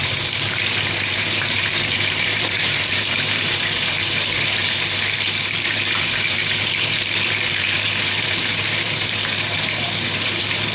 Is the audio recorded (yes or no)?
no